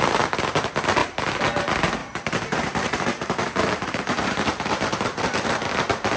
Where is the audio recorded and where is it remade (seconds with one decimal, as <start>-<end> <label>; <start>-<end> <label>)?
0.0-2.0 recorded; 2.0-5.7 remade; 5.7-6.2 recorded